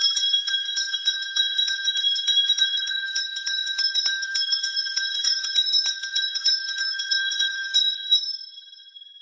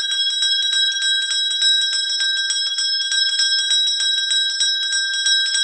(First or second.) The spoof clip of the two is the first